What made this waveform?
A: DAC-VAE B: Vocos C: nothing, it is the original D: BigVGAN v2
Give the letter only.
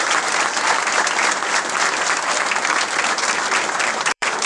D